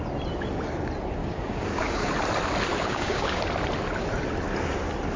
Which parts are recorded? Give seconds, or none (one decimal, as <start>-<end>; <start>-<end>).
0.0-1.2; 2.1-2.7; 3.4-5.2